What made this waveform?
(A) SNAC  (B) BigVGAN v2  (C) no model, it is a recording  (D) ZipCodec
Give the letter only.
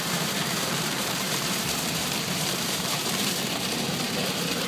B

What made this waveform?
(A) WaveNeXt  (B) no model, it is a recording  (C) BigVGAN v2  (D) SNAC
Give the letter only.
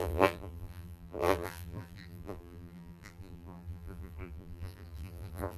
C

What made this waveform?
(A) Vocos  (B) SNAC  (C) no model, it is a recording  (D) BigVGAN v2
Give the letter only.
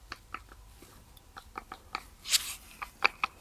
C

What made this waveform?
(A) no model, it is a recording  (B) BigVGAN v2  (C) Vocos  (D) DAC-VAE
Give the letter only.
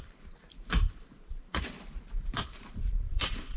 B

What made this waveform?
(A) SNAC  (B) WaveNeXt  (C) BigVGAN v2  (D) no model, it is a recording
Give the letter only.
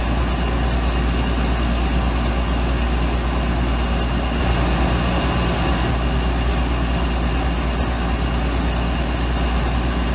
D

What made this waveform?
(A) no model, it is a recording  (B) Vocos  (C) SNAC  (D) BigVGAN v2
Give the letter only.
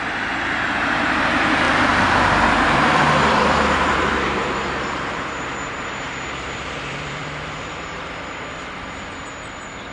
D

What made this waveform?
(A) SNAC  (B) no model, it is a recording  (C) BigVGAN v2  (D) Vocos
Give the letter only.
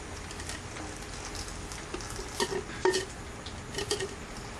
B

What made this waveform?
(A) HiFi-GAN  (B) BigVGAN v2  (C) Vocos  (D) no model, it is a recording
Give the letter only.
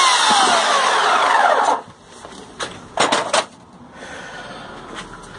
D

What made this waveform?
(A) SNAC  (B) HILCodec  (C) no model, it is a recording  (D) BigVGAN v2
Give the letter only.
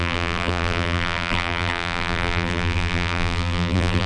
D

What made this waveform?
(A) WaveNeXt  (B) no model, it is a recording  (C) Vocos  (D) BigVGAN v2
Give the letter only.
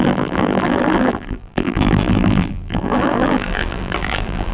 D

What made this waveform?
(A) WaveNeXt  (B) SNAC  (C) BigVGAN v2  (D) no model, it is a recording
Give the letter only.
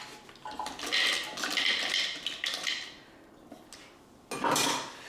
D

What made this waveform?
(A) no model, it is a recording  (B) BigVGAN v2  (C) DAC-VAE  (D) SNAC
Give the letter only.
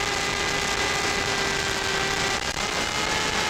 A